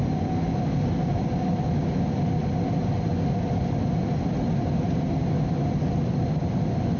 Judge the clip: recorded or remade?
recorded